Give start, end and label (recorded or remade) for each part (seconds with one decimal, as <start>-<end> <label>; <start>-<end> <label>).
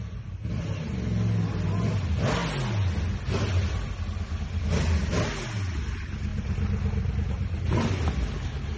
0.0-8.8 recorded